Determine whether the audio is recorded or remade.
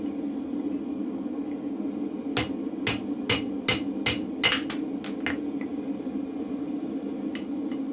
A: recorded